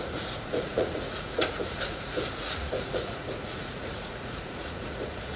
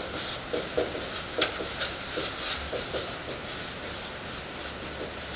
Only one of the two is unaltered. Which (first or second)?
second